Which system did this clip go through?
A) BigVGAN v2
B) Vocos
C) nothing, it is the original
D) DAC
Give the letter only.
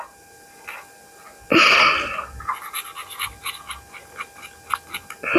C